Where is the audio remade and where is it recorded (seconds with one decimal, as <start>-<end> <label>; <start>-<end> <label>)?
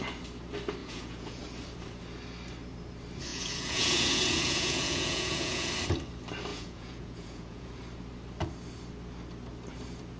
0.0-0.8 recorded; 0.8-1.4 remade; 1.4-3.3 recorded; 3.3-5.7 remade; 5.7-6.5 recorded; 6.5-7.7 remade; 7.7-10.2 recorded